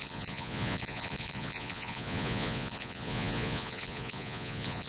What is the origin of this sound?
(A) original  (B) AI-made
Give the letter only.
B